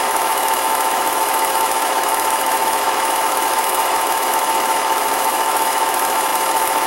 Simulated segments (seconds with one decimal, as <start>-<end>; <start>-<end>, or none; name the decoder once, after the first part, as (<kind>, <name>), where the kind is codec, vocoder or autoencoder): 0.0-6.9 (autoencoder, DAC-VAE)